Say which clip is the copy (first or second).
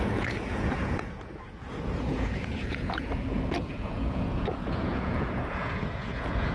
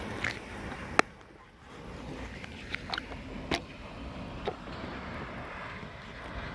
first